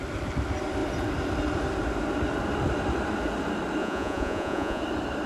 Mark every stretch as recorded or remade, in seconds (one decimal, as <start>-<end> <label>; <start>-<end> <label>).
0.0-3.8 recorded; 3.8-4.8 remade; 4.8-5.3 recorded